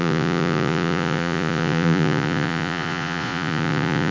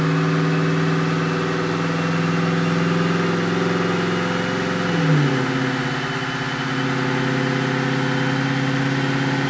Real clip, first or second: second